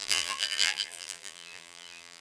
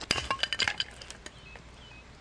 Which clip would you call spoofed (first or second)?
first